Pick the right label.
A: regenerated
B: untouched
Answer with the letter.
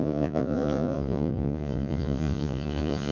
A